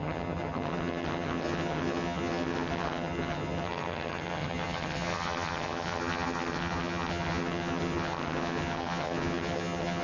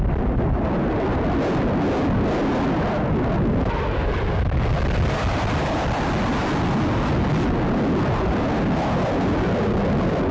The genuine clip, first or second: second